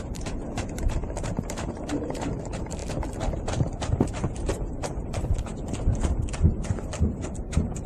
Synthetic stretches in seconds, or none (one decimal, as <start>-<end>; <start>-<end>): 0.0-2.8; 3.3-7.9